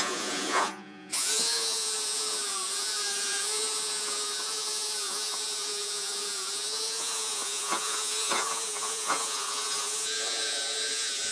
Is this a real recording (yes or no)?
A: no